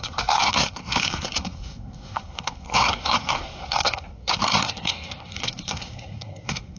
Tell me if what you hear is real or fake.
fake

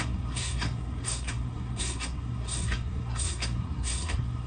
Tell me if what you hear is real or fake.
fake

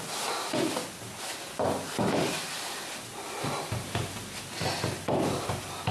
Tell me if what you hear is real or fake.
real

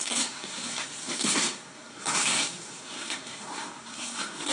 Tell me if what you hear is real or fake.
fake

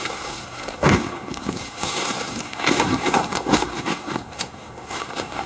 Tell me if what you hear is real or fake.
fake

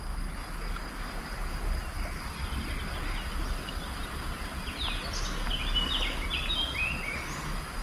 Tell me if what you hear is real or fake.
real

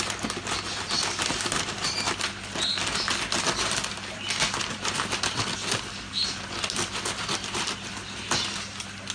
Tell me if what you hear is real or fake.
real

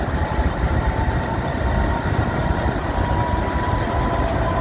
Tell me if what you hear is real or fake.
real